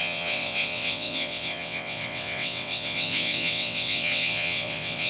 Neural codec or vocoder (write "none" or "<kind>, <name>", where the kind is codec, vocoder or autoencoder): vocoder, WaveNeXt